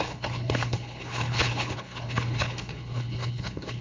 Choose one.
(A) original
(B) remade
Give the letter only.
B